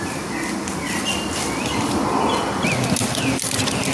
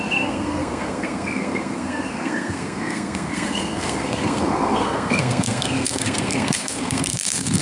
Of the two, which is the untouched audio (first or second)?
first